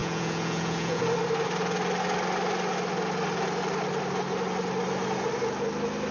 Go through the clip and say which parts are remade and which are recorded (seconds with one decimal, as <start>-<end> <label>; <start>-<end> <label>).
0.0-1.0 remade; 1.0-6.1 recorded